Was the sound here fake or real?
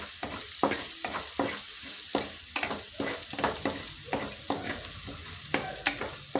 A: real